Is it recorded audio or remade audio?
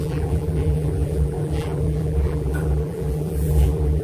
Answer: remade